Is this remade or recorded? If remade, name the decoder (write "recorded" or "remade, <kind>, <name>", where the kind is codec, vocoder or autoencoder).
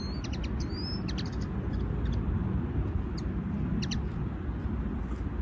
recorded